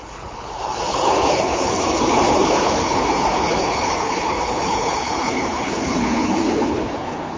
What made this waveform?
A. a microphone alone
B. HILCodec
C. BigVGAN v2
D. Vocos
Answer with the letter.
B